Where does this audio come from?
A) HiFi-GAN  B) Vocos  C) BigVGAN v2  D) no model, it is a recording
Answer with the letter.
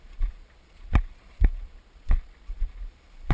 B